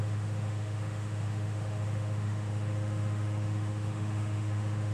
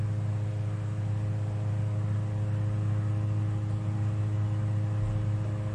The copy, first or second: first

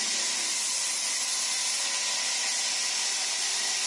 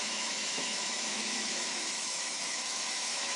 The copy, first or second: second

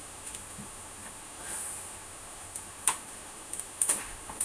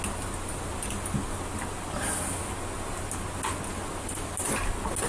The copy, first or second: first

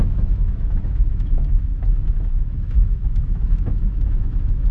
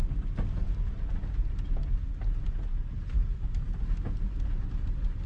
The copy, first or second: first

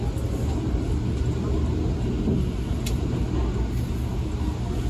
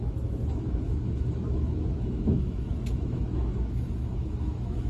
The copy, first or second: second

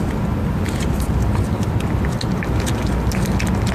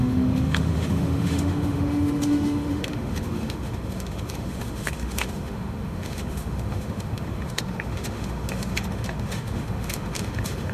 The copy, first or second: second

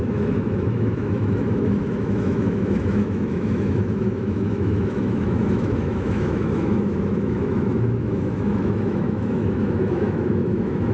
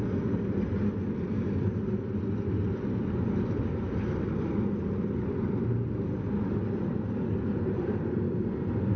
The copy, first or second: first